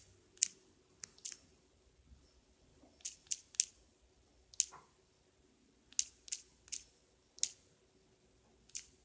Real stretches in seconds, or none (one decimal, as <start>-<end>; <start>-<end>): 0.0-9.0